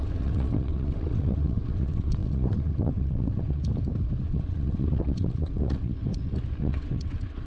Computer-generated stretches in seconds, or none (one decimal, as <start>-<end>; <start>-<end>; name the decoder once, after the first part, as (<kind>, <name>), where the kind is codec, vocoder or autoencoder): 0.0-3.6 (vocoder, WaveNeXt); 4.2-5.9; 6.6-7.5